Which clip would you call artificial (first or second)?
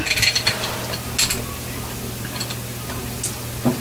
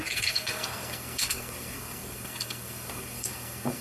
second